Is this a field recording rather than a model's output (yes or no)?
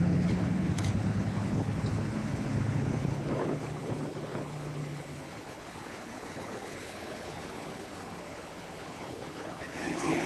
no